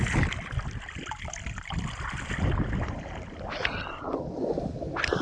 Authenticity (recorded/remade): recorded